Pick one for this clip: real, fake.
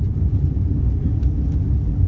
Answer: real